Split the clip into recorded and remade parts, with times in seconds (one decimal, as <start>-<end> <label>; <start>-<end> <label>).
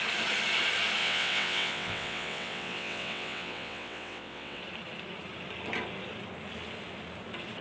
0.0-1.0 recorded; 1.0-4.6 remade; 4.6-7.6 recorded